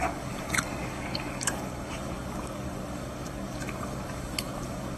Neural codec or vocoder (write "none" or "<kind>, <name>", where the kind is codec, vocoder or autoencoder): codec, DAC